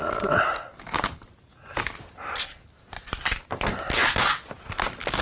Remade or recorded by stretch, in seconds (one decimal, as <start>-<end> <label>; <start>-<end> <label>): 0.0-5.2 recorded